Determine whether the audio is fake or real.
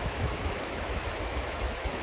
fake